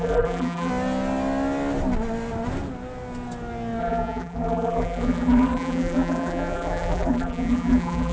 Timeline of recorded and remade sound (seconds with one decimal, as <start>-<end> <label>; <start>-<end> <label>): 0.0-0.7 remade; 0.7-3.8 recorded; 3.8-8.1 remade